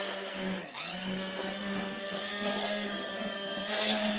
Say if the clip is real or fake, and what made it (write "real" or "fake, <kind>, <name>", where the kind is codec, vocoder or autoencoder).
fake, codec, SNAC